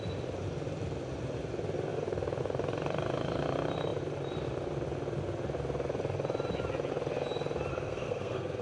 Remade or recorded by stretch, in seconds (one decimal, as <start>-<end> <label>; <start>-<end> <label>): 0.0-7.7 recorded; 7.7-8.6 remade

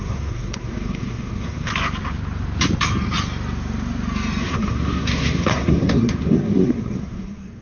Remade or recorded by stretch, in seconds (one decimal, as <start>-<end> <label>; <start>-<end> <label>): 0.0-1.7 remade; 1.7-4.4 recorded; 4.4-7.6 remade

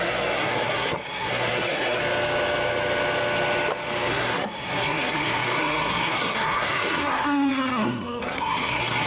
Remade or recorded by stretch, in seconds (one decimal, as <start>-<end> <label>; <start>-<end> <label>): 0.0-2.0 remade; 2.0-4.1 recorded; 4.1-9.1 remade

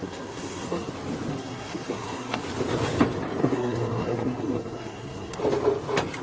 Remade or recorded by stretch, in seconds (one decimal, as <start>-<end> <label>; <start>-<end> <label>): 0.0-0.9 remade; 0.9-1.3 recorded; 1.3-2.4 remade; 2.4-3.4 recorded; 3.4-5.4 remade; 5.4-6.2 recorded

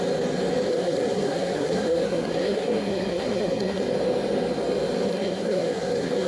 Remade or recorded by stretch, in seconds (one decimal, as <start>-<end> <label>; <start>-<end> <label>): 0.0-0.7 recorded; 0.7-3.8 remade; 3.8-5.1 recorded; 5.1-6.3 remade

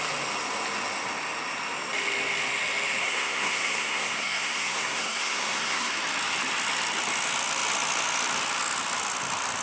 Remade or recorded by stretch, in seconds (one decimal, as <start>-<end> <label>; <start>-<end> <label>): 0.0-3.0 recorded; 3.0-5.9 remade; 5.9-9.6 recorded